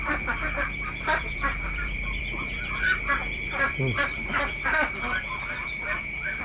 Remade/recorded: remade